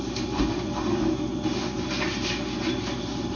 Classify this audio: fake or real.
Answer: real